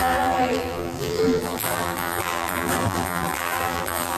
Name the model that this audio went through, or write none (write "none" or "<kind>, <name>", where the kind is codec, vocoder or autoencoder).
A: vocoder, BigVGAN v2